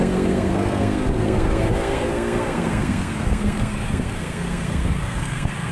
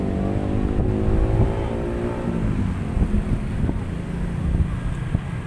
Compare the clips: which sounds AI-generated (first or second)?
first